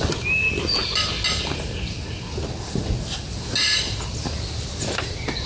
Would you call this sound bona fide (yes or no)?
yes